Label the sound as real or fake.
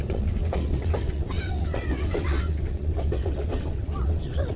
fake